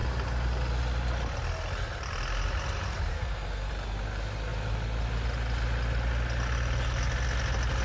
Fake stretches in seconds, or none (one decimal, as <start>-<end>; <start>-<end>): 3.1-3.7